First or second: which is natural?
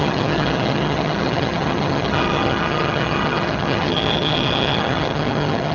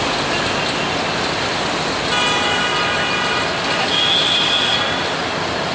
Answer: second